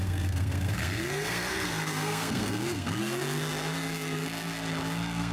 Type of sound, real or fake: fake